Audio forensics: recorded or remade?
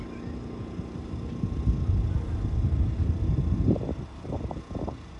recorded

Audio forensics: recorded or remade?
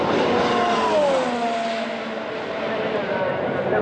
recorded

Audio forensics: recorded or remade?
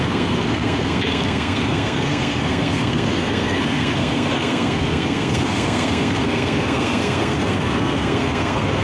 remade